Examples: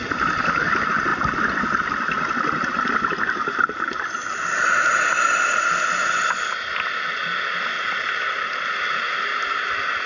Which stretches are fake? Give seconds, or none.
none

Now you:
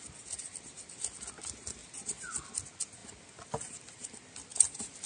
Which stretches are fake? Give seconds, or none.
none

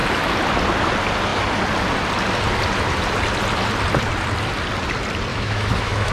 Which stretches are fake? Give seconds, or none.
5.3-6.1 (autoencoder, DAC-VAE)

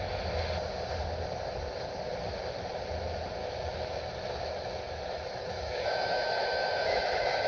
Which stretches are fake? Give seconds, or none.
3.4-7.5 (autoencoder, DAC-VAE)

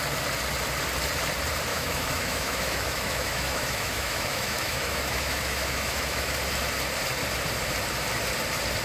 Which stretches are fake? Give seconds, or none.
1.7-6.3 (autoencoder, DAC-VAE)

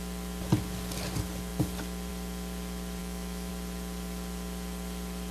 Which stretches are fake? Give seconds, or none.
3.0-3.5 (autoencoder, DAC-VAE)

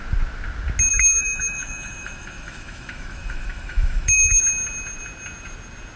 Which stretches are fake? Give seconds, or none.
0.9-4.4 (autoencoder, DAC-VAE)

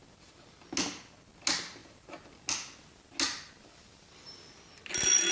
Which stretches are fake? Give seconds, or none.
none